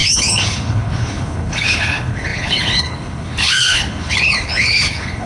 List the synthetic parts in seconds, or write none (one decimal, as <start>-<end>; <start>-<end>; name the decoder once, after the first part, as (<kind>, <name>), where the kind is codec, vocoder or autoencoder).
0.0-5.3 (codec, HILCodec)